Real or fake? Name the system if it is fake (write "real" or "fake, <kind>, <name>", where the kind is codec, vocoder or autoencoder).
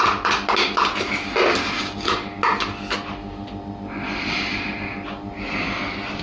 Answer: real